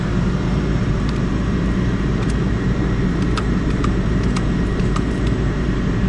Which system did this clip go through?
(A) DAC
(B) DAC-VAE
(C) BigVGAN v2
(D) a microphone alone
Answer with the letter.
C